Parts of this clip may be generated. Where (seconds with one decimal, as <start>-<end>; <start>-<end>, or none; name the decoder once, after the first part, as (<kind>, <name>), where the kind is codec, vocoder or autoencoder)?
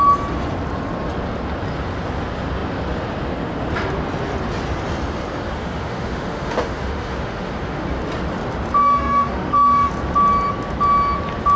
5.6-8.0 (autoencoder, DAC-VAE); 8.8-9.9